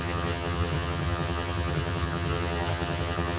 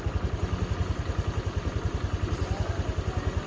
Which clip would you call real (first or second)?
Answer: second